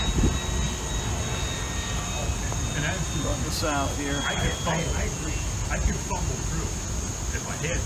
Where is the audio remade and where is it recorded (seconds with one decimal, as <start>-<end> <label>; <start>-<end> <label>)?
0.0-7.9 recorded